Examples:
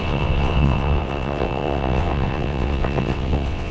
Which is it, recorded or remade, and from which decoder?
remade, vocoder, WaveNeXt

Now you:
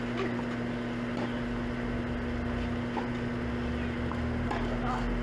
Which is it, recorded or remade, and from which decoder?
recorded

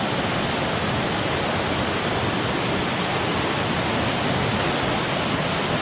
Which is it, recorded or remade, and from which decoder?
recorded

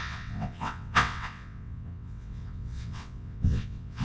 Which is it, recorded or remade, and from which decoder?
remade, vocoder, WaveNeXt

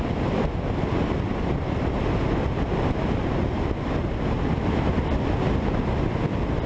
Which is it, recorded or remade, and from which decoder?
recorded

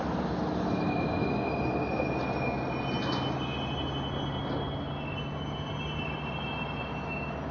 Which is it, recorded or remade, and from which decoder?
recorded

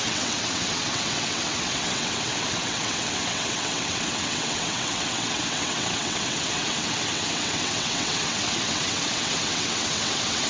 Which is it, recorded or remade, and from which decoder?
remade, vocoder, WaveNeXt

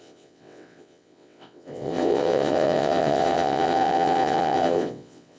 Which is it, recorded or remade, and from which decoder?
remade, vocoder, WaveNeXt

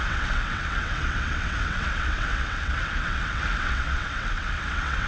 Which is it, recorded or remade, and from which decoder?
remade, vocoder, WaveNeXt